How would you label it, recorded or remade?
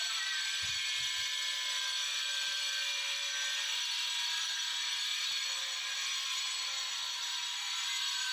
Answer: recorded